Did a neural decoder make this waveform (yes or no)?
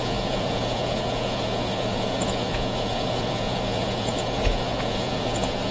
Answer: yes